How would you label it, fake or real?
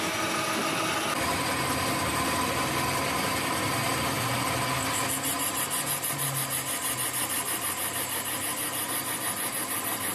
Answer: real